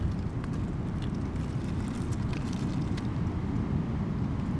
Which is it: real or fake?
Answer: real